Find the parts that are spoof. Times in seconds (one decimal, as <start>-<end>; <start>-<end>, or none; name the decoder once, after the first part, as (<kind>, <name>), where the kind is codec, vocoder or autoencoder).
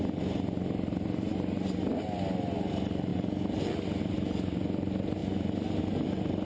none